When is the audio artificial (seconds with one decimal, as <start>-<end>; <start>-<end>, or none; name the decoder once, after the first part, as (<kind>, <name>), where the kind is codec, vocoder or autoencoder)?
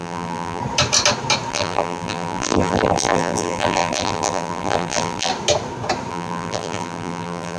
0.0-0.6 (vocoder, BigVGAN v2); 1.5-5.3; 6.1-7.6